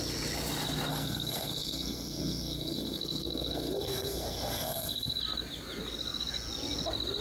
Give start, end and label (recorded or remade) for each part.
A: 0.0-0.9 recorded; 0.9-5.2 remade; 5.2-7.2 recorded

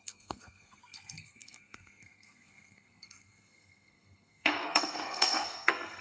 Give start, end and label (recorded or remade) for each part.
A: 0.0-6.0 remade

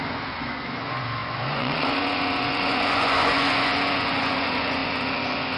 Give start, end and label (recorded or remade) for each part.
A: 0.0-5.6 remade

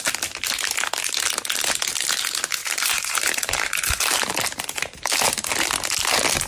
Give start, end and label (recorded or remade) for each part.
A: 0.0-2.6 recorded; 2.6-5.1 remade; 5.1-6.5 recorded